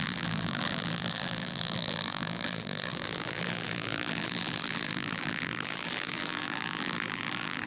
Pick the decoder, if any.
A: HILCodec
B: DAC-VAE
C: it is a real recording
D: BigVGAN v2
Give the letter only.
D